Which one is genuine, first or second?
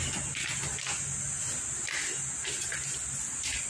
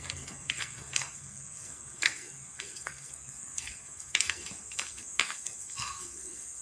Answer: first